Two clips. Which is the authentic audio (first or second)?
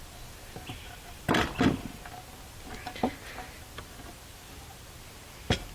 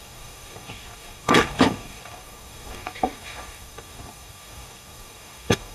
first